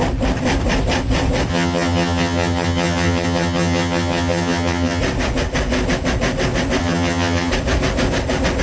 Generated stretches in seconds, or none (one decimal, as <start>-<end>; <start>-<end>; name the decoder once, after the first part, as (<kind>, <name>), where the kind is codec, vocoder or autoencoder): 1.5-5.0 (vocoder, HiFi-GAN); 6.8-7.5